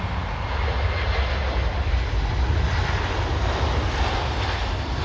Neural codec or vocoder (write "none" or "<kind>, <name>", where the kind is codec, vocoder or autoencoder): none